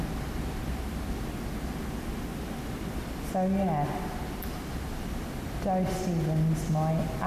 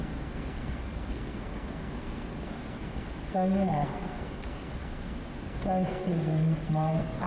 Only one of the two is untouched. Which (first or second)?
first